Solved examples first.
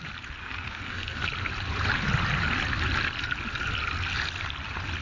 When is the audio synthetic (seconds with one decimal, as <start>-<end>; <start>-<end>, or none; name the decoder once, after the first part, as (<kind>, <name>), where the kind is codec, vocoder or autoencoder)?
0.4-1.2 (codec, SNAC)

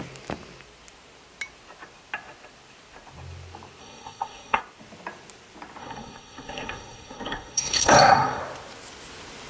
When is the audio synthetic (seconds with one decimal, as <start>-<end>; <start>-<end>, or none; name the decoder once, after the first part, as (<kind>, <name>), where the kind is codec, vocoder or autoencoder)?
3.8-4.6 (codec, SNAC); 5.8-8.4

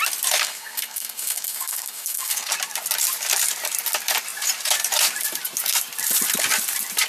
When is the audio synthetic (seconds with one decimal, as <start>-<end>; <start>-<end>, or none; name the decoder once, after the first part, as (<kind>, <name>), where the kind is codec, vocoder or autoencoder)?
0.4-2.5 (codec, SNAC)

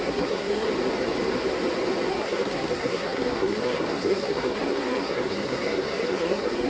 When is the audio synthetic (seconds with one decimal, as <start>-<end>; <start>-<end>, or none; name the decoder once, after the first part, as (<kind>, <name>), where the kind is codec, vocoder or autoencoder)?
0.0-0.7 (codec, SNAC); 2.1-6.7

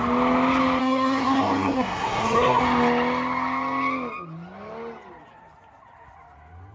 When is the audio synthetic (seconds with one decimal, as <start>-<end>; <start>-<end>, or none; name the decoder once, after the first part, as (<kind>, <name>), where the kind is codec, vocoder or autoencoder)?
0.8-2.6 (codec, SNAC)